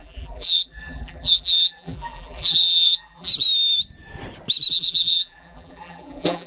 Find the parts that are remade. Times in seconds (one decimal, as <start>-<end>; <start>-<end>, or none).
0.0-3.3; 4.7-6.5

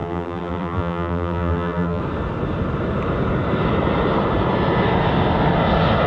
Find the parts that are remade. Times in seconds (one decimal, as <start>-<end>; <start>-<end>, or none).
0.0-2.0

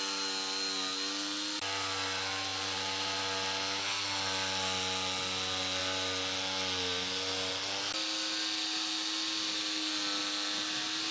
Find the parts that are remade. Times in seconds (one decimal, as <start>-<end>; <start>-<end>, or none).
2.5-3.2

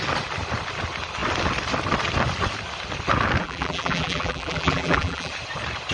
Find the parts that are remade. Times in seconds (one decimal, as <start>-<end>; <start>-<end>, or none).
3.4-5.3

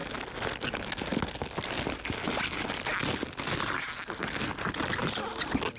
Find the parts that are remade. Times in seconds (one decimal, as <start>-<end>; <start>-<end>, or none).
none

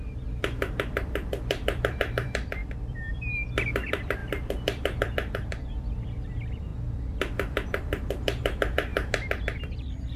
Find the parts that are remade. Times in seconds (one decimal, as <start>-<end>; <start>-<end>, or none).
0.0-8.9; 9.6-10.2